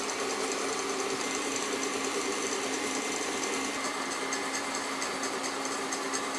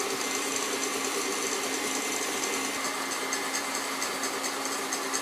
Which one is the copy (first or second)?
first